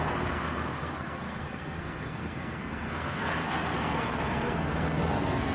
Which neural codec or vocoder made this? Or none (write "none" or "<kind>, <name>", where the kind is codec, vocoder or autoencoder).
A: codec, SNAC